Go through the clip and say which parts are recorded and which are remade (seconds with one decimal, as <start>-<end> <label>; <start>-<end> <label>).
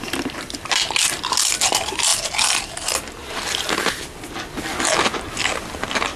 0.0-6.2 recorded